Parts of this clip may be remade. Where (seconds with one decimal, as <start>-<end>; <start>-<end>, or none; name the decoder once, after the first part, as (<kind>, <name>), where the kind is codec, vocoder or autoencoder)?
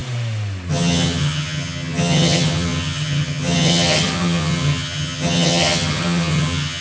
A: 0.7-6.8 (vocoder, HiFi-GAN)